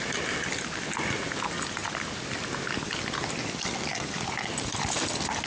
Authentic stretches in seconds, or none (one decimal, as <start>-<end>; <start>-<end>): 0.0-5.5